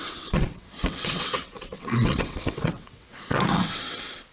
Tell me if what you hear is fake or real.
fake